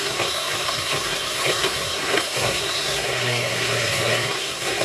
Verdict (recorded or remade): remade